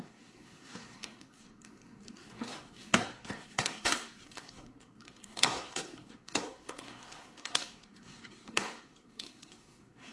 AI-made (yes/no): yes